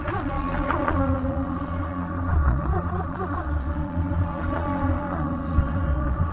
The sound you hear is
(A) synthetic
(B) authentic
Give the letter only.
A